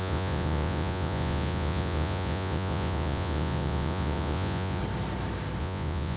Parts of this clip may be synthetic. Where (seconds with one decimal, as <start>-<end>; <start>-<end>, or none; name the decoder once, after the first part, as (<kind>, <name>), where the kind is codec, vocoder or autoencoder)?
0.0-4.8 (vocoder, Vocos); 5.6-6.2